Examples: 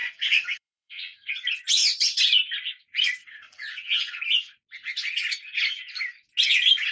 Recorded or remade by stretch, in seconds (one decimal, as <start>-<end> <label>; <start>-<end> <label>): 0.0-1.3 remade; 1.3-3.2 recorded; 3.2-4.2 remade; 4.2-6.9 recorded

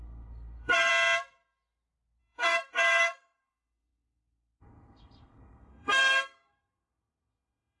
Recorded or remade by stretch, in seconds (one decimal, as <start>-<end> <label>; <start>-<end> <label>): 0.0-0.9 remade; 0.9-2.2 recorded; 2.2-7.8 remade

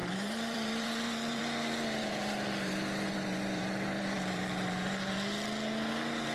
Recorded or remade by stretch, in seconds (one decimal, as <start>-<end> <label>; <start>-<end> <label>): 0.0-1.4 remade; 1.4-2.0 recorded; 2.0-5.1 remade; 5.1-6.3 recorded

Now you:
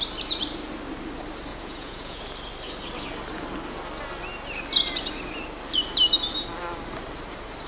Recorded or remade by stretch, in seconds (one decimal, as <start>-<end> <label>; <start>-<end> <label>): 0.0-1.5 recorded; 1.5-2.2 remade; 2.2-7.7 recorded

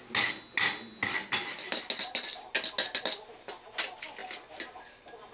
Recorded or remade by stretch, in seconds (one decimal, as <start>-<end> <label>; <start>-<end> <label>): 0.0-4.2 recorded; 4.2-5.3 remade